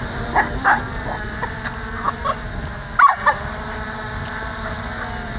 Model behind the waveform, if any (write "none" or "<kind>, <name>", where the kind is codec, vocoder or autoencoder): none